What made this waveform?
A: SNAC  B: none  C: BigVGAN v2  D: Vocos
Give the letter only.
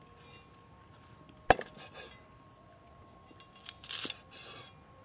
B